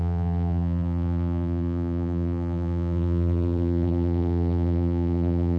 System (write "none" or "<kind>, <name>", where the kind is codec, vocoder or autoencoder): vocoder, BigVGAN v2